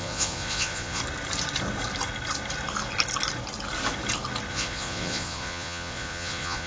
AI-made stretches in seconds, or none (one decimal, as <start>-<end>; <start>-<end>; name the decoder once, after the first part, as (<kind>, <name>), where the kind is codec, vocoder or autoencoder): 0.0-1.0 (vocoder, Vocos); 4.5-6.7